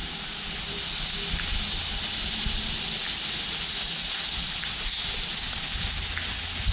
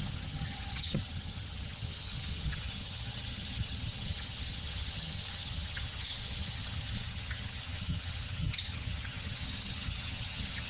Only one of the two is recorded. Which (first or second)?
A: first